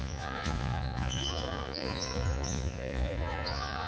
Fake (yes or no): yes